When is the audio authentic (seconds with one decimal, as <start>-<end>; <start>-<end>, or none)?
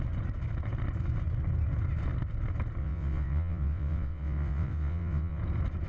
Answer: 0.0-2.8; 5.4-5.9